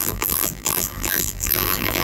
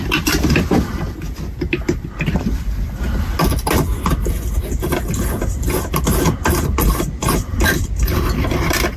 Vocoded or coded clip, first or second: first